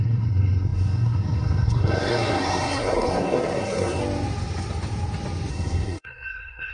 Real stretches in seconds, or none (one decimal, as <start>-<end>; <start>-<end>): 4.0-5.5